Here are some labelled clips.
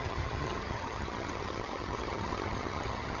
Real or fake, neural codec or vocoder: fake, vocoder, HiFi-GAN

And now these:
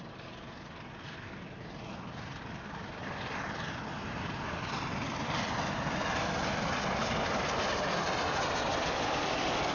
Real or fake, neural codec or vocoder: real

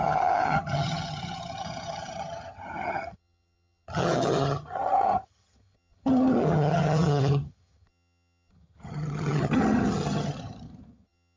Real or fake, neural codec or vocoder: fake, vocoder, HiFi-GAN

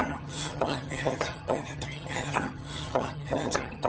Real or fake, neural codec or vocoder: fake, vocoder, HiFi-GAN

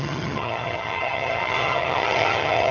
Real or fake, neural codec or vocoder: fake, vocoder, HiFi-GAN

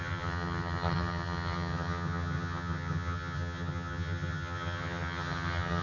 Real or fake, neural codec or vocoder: fake, vocoder, HiFi-GAN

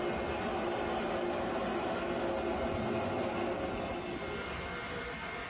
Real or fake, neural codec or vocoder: real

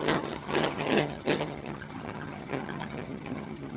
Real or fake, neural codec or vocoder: fake, vocoder, HiFi-GAN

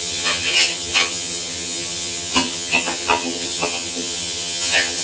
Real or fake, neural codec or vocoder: fake, vocoder, HiFi-GAN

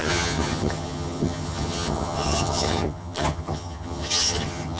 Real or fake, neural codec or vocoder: fake, vocoder, HiFi-GAN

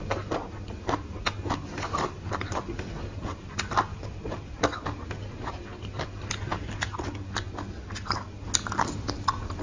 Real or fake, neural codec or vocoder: real